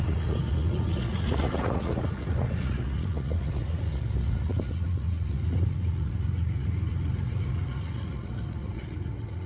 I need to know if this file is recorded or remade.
remade